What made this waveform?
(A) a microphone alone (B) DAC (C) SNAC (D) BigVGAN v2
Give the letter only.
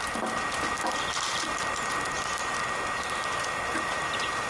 A